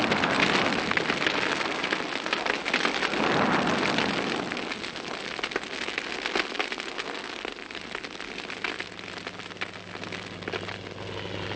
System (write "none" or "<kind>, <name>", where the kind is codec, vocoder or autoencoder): none